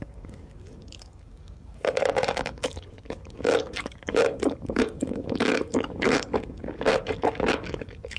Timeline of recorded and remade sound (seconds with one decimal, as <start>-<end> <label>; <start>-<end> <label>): 0.0-8.2 remade